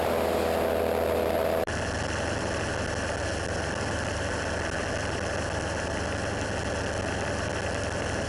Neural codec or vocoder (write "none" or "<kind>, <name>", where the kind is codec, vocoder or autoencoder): none